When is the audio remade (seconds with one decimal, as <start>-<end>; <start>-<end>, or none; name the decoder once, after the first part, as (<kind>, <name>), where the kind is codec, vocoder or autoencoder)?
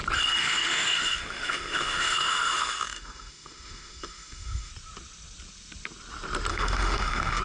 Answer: 0.4-4.7 (autoencoder, DAC-VAE); 6.5-7.4